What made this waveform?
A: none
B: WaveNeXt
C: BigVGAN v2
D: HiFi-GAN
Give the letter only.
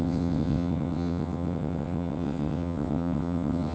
B